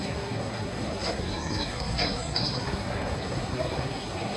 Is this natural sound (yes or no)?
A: no